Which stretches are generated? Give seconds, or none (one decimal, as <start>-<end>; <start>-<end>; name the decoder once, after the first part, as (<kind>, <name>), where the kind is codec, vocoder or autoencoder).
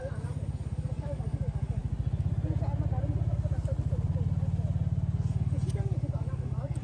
0.0-1.8 (codec, DAC); 5.3-6.8